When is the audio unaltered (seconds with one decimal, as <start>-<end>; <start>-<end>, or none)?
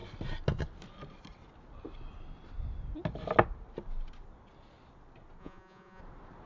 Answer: 0.0-5.4; 6.0-6.5